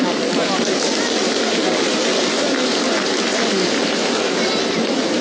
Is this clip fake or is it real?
real